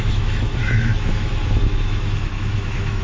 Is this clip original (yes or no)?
no